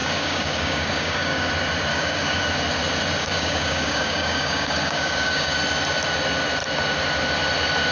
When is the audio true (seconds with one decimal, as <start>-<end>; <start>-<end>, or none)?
1.5-1.9; 2.4-3.2; 5.5-7.9

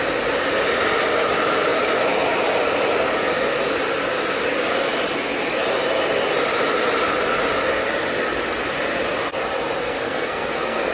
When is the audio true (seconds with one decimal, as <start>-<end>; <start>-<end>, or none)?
0.0-9.8

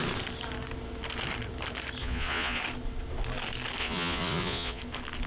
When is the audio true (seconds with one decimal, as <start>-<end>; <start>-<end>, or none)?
0.0-2.0; 2.6-3.8; 4.8-5.3

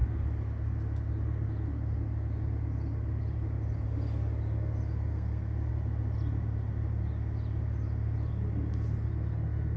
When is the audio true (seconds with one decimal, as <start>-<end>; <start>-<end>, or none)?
0.0-5.1; 5.7-9.8

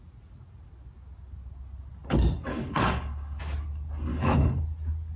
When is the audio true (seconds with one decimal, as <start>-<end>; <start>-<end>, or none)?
0.0-2.5; 3.4-4.1; 4.6-5.2